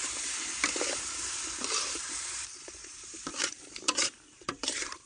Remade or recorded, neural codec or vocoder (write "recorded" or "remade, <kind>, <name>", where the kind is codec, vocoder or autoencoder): remade, vocoder, BigVGAN v2